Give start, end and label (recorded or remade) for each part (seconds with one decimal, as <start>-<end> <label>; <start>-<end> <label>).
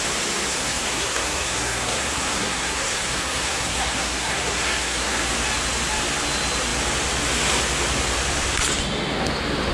0.0-0.5 recorded; 0.5-5.3 remade; 5.3-9.7 recorded